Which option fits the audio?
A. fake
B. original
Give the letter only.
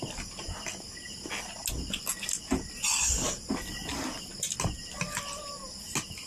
B